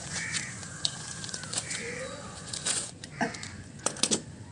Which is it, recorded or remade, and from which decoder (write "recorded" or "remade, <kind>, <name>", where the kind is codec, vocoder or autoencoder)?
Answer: remade, vocoder, Vocos